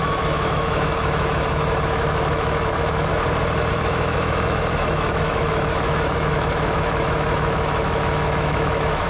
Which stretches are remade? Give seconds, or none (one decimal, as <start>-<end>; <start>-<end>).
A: 0.0-3.1; 3.7-9.1